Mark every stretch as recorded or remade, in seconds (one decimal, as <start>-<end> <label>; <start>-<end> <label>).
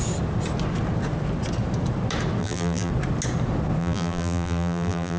0.0-2.4 recorded; 2.4-2.9 remade; 2.9-3.8 recorded; 3.8-5.2 remade